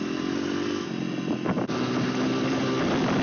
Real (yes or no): yes